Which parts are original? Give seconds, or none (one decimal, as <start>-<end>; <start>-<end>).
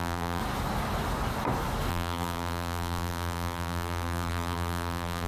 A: 0.4-1.9